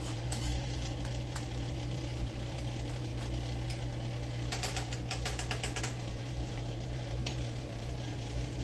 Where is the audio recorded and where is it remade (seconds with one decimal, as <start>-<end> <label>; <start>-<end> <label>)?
0.0-3.1 remade; 3.1-5.8 recorded; 5.8-8.6 remade